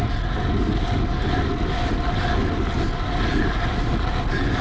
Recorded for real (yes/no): yes